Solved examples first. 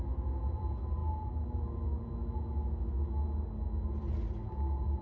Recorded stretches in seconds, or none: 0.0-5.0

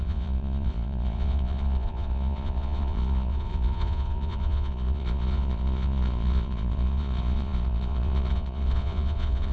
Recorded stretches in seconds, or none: none